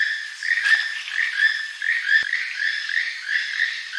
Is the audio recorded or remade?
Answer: recorded